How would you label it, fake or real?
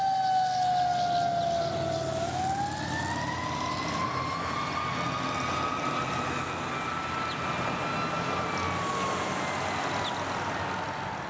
real